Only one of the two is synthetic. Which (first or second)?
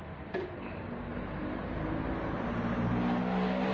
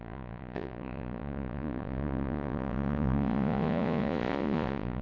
second